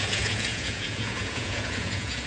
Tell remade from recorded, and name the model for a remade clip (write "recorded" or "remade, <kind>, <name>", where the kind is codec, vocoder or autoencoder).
remade, vocoder, Vocos